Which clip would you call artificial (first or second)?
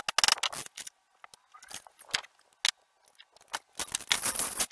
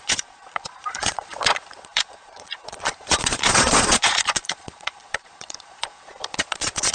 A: second